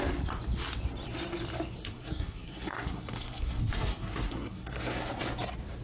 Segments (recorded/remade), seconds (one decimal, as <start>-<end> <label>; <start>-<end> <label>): 0.0-1.8 recorded; 1.8-5.1 remade; 5.1-5.8 recorded